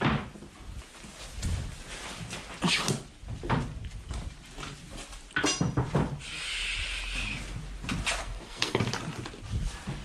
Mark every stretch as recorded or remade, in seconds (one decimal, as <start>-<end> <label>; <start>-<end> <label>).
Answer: 0.0-8.2 recorded; 8.2-8.8 remade; 8.8-10.0 recorded